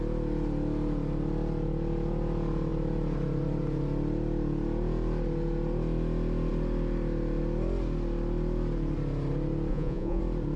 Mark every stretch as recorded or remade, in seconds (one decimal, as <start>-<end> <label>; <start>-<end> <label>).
0.0-9.7 recorded; 9.7-10.2 remade; 10.2-10.6 recorded